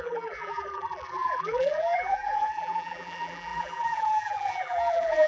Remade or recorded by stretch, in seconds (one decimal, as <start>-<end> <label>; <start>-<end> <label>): 0.0-5.3 remade